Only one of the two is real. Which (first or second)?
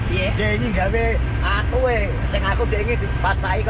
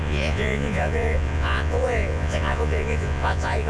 first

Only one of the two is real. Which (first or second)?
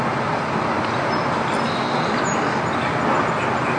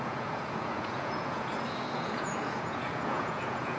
first